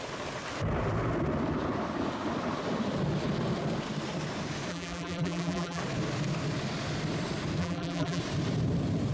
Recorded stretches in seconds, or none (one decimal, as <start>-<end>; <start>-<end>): 0.0-4.7; 5.8-7.6; 8.2-9.1